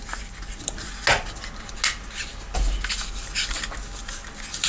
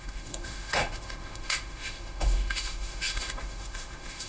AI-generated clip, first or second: second